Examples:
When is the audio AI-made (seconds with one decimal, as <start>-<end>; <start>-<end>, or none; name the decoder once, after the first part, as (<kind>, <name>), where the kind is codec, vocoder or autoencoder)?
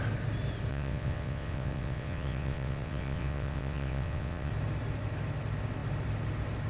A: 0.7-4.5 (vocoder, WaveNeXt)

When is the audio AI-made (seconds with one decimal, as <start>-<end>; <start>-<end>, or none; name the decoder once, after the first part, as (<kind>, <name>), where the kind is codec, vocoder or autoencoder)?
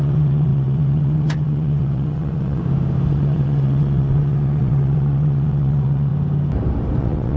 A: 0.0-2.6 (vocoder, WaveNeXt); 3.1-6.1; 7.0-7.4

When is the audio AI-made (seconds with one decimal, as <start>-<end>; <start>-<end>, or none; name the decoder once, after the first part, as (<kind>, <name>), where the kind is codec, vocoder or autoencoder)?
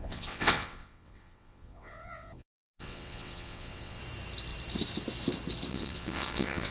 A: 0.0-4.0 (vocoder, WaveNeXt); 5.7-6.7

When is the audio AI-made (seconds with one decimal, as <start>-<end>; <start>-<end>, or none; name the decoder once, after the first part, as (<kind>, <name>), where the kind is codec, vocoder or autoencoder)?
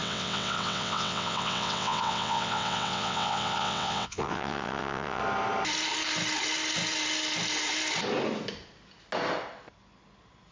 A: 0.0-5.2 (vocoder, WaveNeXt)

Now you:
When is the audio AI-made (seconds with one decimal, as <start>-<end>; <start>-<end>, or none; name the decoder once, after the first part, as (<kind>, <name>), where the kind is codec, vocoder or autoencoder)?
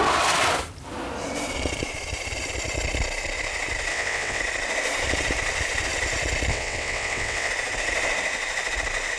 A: 3.9-4.4 (vocoder, WaveNeXt); 6.5-7.5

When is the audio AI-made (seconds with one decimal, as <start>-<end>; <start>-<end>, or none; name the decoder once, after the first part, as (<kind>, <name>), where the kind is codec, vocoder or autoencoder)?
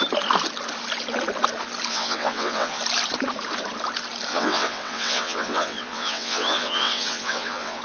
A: 1.9-2.8 (vocoder, WaveNeXt); 4.3-7.8